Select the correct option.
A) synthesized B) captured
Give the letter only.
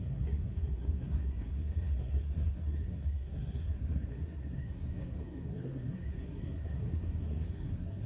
A